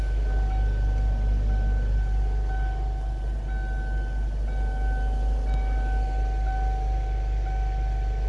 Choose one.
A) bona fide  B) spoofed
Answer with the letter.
A